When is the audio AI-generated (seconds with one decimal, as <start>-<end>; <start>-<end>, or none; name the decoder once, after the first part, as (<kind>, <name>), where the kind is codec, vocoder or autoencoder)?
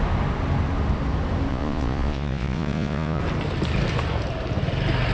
1.5-3.2 (vocoder, Vocos)